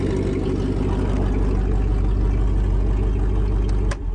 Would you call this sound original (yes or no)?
yes